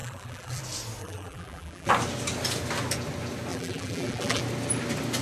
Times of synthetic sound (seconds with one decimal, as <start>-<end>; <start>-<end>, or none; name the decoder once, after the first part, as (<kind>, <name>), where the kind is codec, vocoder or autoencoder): 0.0-0.6 (vocoder, BigVGAN v2); 1.0-1.9; 3.5-4.4